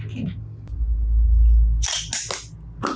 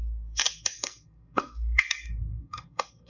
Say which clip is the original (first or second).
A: first